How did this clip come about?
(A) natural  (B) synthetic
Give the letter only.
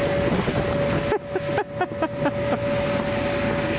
A